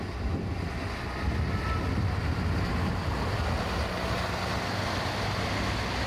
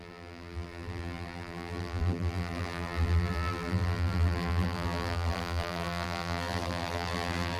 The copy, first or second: second